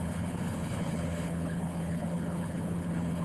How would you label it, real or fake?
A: fake